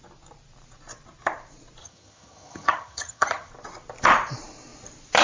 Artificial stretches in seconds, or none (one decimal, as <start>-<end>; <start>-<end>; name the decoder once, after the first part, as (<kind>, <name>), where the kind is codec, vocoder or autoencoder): 1.8-3.5 (vocoder, HiFi-GAN)